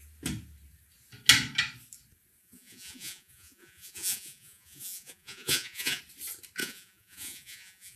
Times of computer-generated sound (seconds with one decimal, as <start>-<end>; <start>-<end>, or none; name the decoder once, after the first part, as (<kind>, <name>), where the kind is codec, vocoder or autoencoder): 2.4-6.0 (vocoder, Vocos); 6.6-8.0